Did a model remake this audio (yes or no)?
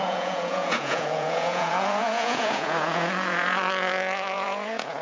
yes